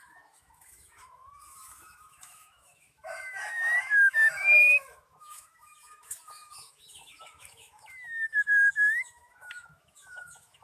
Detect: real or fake fake